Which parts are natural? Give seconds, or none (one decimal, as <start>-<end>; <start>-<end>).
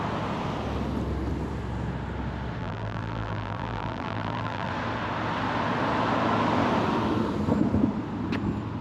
0.0-2.6; 4.7-8.8